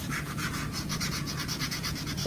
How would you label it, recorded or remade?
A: remade